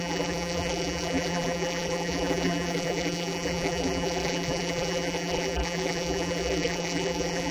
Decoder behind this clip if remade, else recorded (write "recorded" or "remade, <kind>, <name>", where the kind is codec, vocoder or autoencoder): remade, vocoder, BigVGAN v2